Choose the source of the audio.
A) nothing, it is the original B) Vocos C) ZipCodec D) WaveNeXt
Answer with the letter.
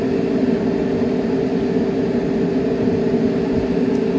A